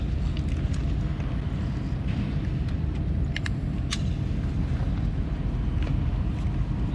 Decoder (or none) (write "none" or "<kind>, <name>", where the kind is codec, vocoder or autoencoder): none